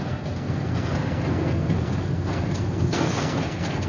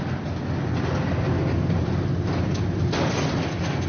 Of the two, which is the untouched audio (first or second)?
second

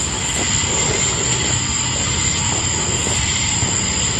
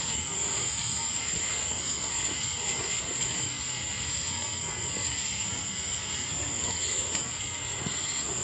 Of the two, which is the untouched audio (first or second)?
first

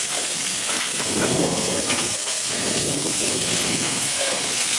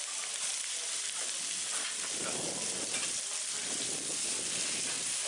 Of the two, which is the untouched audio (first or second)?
second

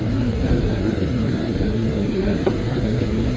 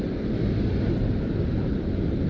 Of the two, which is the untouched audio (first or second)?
second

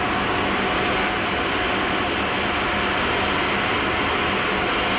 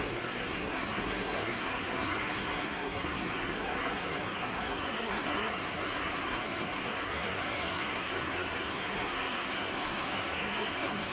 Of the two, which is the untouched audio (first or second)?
first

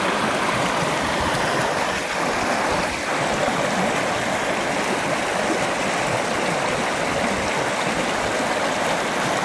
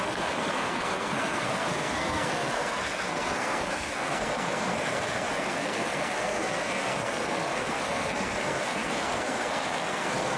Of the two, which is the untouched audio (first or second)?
first